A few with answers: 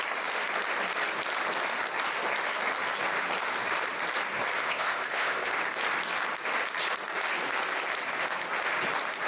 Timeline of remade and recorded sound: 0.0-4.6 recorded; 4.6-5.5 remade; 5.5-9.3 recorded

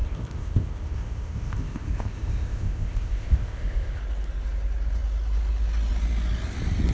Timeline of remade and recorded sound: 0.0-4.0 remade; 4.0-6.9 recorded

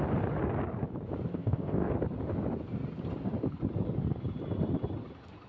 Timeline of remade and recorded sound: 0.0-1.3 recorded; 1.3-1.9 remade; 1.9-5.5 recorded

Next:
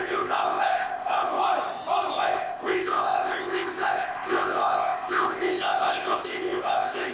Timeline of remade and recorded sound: 0.0-1.4 remade; 1.4-2.1 recorded; 2.1-7.1 remade

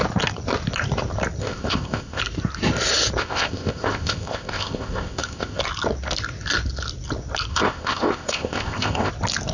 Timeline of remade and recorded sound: 0.0-1.4 recorded; 1.4-2.2 remade; 2.2-3.2 recorded; 3.2-5.6 remade; 5.6-7.5 recorded; 7.5-9.1 remade; 9.1-9.5 recorded